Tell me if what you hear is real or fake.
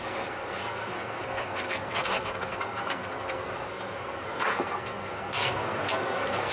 fake